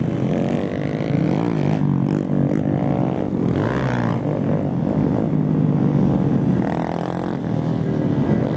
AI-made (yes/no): no